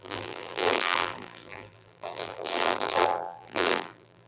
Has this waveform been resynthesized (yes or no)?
yes